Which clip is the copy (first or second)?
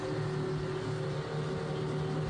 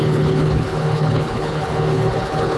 second